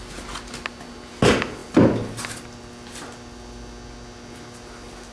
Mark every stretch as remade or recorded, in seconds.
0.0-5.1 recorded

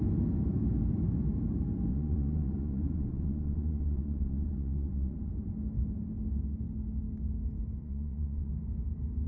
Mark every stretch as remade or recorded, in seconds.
0.0-1.9 recorded; 1.9-5.3 remade; 5.3-7.8 recorded; 7.8-8.5 remade; 8.5-9.3 recorded

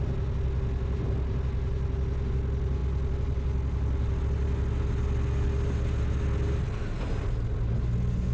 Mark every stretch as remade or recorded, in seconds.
0.0-8.3 recorded

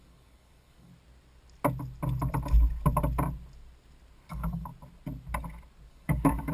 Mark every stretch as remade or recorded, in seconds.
0.0-0.9 remade; 0.9-4.3 recorded; 4.3-4.7 remade; 4.7-5.9 recorded; 5.9-6.5 remade